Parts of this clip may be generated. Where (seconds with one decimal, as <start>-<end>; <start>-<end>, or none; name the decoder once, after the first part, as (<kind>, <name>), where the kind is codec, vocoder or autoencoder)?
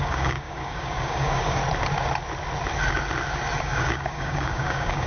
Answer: 0.0-1.6 (codec, DAC); 3.6-5.1